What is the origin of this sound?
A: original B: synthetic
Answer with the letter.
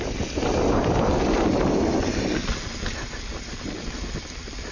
A